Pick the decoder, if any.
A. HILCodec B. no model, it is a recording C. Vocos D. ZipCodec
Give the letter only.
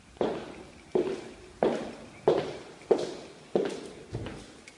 B